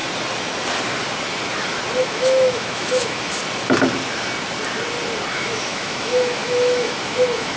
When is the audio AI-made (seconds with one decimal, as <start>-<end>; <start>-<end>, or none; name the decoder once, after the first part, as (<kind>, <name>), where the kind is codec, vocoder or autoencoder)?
2.0-3.4 (autoencoder, DAC-VAE); 5.3-7.6